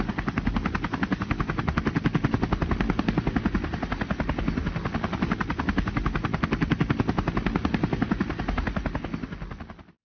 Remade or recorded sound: recorded